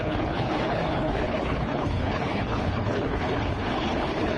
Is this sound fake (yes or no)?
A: yes